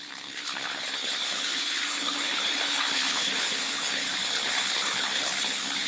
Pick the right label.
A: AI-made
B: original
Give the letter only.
A